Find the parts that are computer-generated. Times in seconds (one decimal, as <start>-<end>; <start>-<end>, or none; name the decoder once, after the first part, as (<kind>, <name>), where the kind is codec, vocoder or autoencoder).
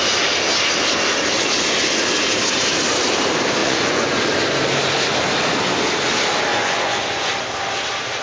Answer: 3.6-4.1 (vocoder, Vocos); 6.5-7.3